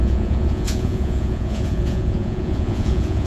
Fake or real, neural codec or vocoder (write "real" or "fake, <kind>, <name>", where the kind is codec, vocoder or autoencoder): fake, vocoder, Vocos